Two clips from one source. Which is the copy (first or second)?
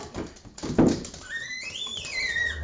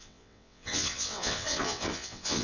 second